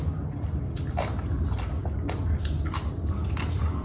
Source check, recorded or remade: recorded